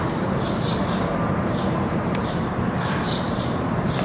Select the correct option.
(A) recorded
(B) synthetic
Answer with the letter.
B